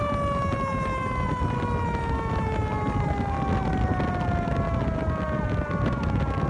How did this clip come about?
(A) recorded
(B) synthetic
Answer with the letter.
A